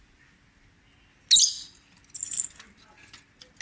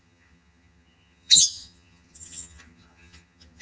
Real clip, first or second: first